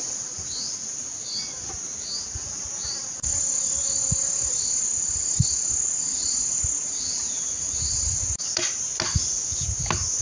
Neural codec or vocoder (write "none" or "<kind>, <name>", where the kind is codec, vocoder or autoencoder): none